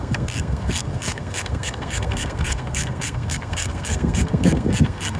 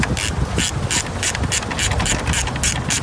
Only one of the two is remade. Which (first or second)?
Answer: first